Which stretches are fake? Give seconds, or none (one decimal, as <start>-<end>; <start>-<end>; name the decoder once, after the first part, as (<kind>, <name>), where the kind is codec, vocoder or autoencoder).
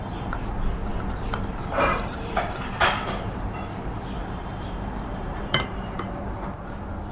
0.9-2.4 (vocoder, BigVGAN v2); 4.2-6.2